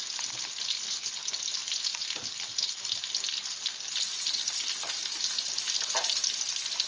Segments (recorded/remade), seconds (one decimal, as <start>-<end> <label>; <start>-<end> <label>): 0.0-6.9 recorded